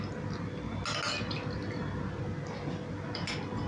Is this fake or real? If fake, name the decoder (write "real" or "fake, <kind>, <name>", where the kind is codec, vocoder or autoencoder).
real